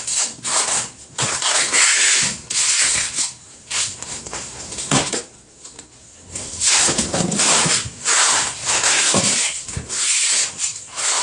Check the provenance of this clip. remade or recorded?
remade